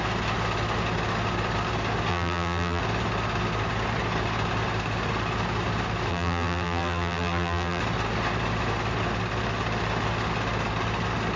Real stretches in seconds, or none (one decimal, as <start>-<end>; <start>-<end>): 0.0-2.1; 2.8-6.1; 7.8-11.4